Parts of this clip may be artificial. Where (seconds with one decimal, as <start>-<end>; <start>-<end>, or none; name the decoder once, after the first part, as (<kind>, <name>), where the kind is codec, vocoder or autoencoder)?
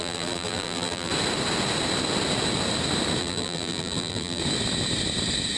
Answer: 0.0-1.1 (vocoder, BigVGAN v2); 3.2-4.4